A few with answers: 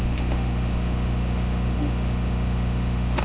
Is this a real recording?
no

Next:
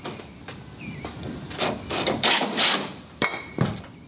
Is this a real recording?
yes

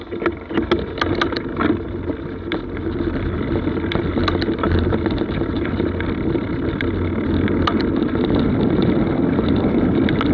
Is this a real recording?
yes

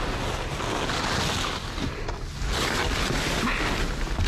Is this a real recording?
yes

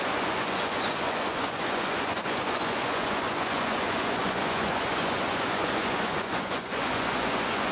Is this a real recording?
no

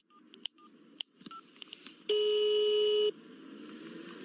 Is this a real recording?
yes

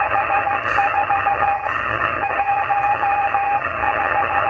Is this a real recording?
no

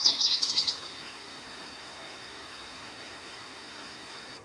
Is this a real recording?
no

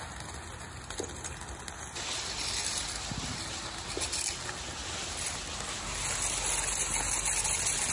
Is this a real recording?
yes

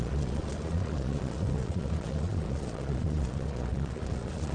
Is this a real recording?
no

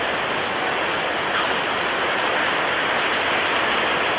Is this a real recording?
yes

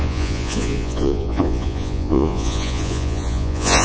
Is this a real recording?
no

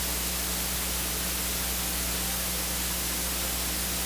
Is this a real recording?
yes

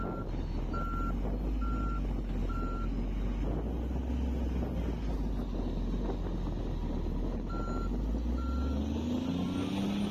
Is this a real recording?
yes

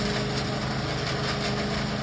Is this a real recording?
yes